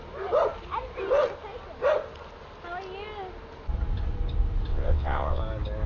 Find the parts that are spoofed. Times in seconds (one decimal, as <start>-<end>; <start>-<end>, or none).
4.7-5.4

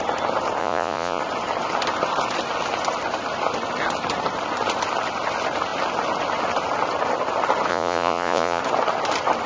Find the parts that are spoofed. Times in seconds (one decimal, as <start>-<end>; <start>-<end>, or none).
0.6-1.2; 7.7-8.6

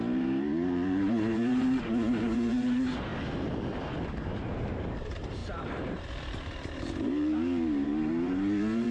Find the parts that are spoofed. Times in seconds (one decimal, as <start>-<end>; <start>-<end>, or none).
0.0-3.1; 4.0-8.9